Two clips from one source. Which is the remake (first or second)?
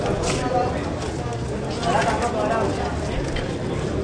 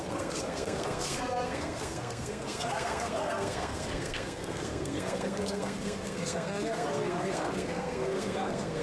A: second